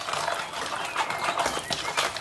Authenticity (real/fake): real